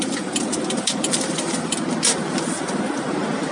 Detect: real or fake real